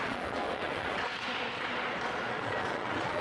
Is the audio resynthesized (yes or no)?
yes